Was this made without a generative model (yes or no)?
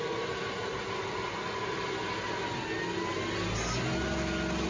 yes